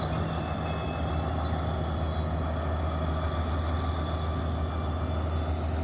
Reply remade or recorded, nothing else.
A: recorded